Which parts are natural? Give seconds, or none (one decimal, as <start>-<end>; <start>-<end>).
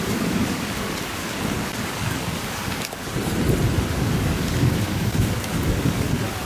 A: 3.0-4.0